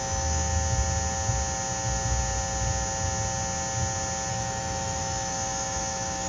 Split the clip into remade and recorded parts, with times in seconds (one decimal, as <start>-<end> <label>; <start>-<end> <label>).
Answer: 0.0-0.5 remade; 0.5-4.3 recorded; 4.3-6.3 remade